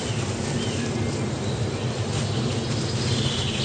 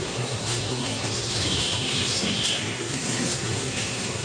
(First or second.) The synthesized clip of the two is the second